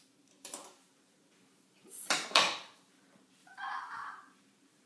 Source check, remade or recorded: remade